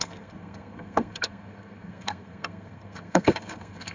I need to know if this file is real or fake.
fake